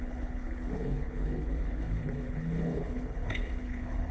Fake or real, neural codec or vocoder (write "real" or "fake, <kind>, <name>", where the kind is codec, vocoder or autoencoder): fake, codec, HILCodec